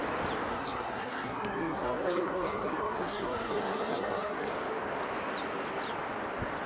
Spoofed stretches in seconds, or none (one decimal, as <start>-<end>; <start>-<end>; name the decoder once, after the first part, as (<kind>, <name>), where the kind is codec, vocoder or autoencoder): 0.5-4.5 (codec, SNAC)